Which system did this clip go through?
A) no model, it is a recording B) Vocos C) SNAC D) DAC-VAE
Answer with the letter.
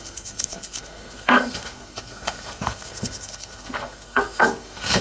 C